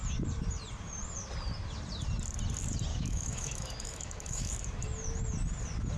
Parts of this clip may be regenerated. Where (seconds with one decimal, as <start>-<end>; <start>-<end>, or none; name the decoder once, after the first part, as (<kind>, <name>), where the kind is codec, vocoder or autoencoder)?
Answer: 2.9-4.5 (autoencoder, DAC-VAE)